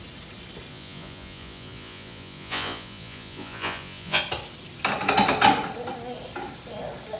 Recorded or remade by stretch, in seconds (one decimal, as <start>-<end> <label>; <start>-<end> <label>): 0.0-0.7 recorded; 0.7-4.2 remade; 4.2-7.2 recorded